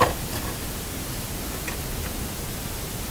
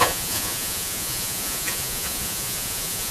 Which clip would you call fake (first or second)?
second